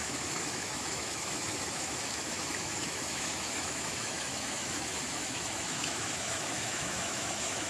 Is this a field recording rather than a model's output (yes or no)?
no